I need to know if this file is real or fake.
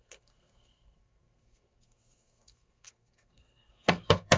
fake